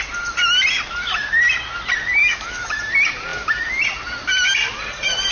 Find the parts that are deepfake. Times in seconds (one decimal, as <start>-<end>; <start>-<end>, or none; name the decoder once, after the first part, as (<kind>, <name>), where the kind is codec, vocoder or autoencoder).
2.2-2.8 (autoencoder, DAC-VAE)